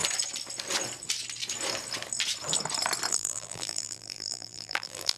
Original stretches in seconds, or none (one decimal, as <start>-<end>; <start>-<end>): 0.0-3.1